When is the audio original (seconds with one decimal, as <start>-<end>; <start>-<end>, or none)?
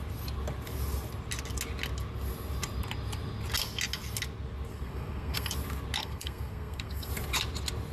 0.0-4.7; 5.5-6.0; 7.1-7.9